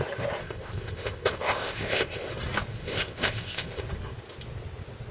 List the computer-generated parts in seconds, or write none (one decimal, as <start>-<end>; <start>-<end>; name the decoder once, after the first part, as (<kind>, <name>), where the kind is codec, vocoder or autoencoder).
0.4-2.3 (codec, ZipCodec); 2.7-3.8